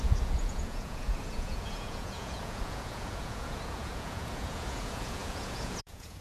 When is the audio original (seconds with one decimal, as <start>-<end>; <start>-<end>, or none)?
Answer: none